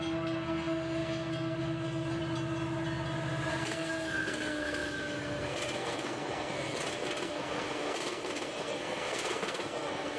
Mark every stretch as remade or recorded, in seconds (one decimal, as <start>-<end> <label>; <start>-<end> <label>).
0.0-2.2 remade; 2.2-3.5 recorded; 3.5-10.2 remade